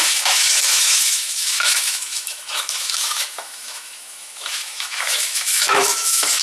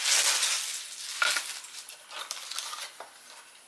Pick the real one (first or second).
second